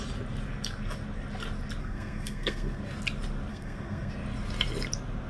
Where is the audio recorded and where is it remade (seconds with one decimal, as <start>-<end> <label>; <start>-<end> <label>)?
0.0-1.8 recorded; 1.8-2.8 remade; 2.8-3.5 recorded; 3.5-4.1 remade; 4.1-5.3 recorded